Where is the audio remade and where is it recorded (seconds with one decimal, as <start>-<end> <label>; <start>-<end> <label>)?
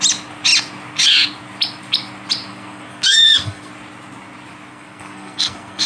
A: 0.0-2.5 recorded; 2.5-3.7 remade; 3.7-4.7 recorded; 4.7-5.9 remade